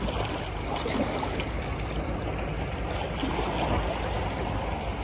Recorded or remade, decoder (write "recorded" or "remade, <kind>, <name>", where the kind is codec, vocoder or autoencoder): recorded